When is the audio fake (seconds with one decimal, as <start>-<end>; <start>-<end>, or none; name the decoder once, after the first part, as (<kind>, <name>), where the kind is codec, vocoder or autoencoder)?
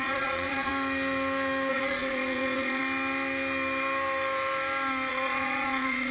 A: 0.0-0.7 (vocoder, Vocos); 1.7-2.8; 5.1-6.1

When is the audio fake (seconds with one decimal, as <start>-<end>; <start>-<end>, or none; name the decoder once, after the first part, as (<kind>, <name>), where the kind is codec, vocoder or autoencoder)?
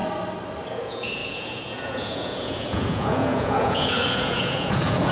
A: 0.7-5.1 (vocoder, Vocos)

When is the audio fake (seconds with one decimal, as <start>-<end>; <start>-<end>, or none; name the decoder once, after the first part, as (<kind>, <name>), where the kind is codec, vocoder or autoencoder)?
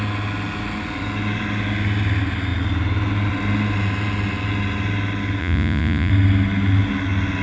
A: 5.4-6.1 (vocoder, Vocos)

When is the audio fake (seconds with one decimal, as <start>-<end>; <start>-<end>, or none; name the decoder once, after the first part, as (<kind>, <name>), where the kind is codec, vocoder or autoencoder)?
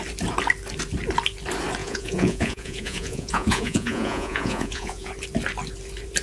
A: 1.8-5.1 (vocoder, Vocos)